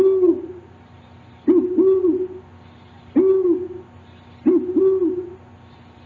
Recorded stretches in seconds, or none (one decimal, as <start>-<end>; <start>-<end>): 0.0-6.1